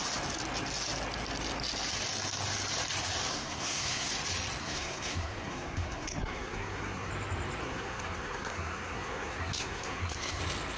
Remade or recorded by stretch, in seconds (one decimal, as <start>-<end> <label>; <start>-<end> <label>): 0.0-3.3 recorded; 3.3-4.1 remade; 4.1-4.6 recorded; 4.6-7.1 remade; 7.1-7.6 recorded; 7.6-10.4 remade; 10.4-10.8 recorded